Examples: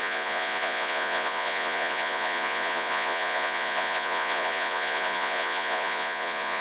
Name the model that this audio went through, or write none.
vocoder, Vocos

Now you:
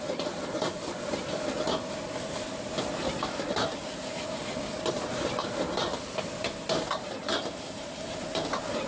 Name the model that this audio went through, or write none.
none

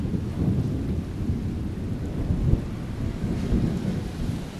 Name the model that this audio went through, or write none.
none